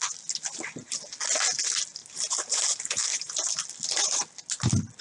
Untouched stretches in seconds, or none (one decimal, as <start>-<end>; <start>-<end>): 0.0-2.0; 3.5-5.0